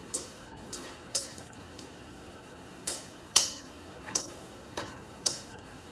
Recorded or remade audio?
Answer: remade